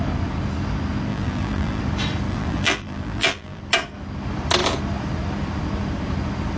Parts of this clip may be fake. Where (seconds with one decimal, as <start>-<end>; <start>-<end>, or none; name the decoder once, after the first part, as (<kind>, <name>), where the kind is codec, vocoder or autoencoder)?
1.1-1.8 (vocoder, BigVGAN v2); 2.3-3.6